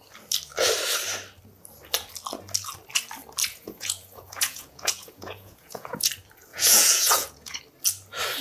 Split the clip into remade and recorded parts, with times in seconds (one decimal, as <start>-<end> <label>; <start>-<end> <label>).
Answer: 0.0-3.4 recorded; 3.4-6.1 remade; 6.1-6.5 recorded; 6.5-7.6 remade; 7.6-8.4 recorded